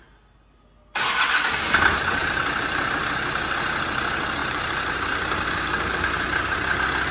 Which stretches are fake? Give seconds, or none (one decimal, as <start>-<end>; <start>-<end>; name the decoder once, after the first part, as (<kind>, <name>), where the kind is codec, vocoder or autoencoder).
4.4-5.9 (vocoder, BigVGAN v2)